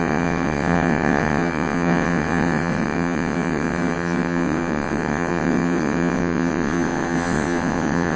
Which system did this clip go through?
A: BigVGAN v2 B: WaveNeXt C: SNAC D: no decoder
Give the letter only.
B